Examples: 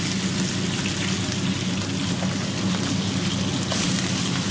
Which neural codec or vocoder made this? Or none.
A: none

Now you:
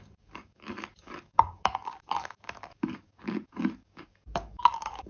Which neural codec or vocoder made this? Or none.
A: codec, DAC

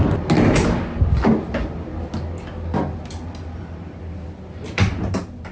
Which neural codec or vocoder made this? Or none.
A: none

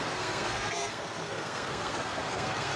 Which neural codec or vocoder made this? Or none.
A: codec, SNAC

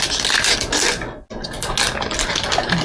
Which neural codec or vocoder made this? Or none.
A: none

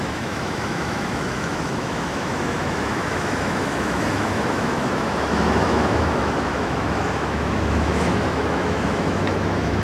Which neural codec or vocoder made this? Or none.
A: autoencoder, DAC-VAE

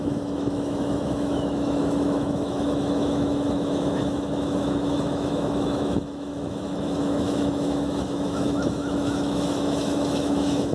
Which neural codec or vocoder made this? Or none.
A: autoencoder, DAC-VAE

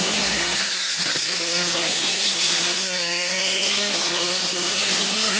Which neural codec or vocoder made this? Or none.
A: codec, SNAC